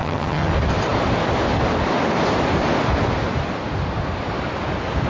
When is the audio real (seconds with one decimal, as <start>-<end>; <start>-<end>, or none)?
0.5-5.1